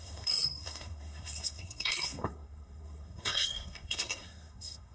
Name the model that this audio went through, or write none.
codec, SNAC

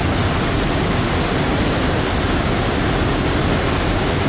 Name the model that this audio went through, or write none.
none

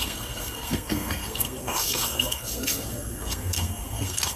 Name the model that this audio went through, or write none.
codec, SNAC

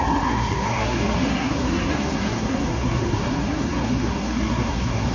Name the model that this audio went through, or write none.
codec, SNAC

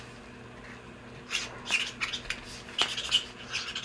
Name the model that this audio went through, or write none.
none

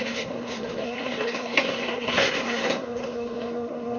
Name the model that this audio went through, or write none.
codec, SNAC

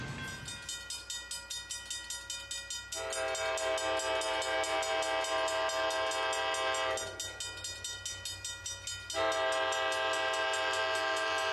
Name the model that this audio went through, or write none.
none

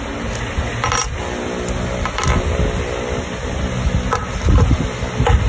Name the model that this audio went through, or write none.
none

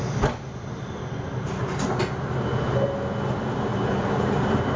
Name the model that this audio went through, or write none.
none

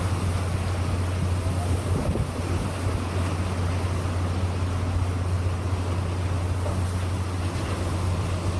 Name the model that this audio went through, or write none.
none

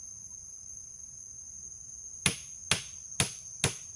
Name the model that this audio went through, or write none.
none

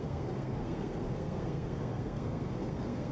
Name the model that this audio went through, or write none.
codec, SNAC